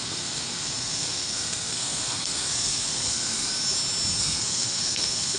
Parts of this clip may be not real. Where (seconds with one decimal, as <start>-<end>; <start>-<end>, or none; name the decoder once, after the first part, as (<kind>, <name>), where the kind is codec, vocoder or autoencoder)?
0.0-3.5 (codec, SNAC); 4.2-5.4